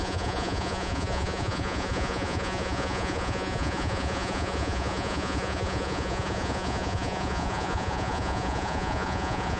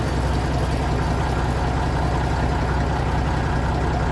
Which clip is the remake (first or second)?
first